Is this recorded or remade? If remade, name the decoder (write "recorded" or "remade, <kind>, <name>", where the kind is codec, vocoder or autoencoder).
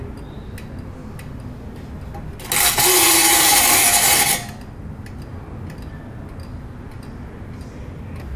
recorded